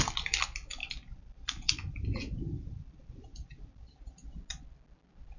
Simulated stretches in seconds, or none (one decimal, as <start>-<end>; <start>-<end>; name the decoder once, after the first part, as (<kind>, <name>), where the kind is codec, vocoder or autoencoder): 0.8-4.0 (vocoder, BigVGAN v2)